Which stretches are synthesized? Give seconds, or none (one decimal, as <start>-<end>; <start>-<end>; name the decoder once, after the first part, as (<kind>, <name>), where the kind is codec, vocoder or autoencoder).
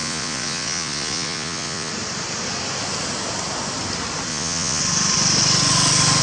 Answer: 0.0-1.9 (vocoder, Vocos); 4.3-4.8